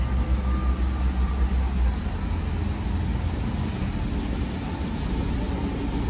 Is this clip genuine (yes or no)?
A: yes